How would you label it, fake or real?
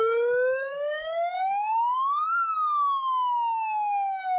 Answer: real